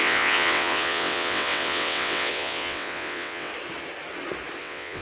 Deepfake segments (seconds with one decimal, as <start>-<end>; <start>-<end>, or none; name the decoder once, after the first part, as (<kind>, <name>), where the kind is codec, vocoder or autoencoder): 0.0-3.5 (vocoder, WaveNeXt); 4.6-5.0